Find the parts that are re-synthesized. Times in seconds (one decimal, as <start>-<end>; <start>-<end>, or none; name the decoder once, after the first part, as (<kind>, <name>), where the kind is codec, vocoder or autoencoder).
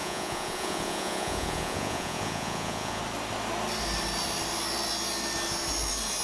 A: 0.0-3.0 (vocoder, Vocos)